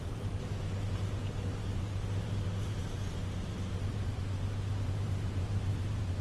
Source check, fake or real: fake